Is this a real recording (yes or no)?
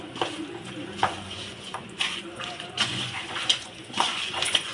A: no